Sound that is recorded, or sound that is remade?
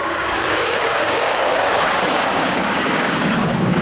remade